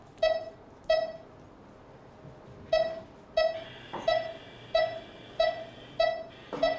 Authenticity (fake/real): real